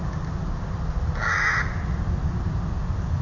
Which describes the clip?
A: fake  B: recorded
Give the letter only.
B